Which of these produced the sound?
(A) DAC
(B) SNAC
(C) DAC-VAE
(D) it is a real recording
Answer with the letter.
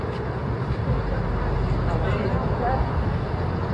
D